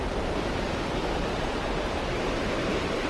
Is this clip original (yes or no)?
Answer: no